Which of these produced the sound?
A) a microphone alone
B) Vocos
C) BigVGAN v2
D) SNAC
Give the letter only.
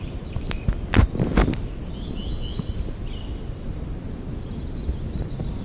A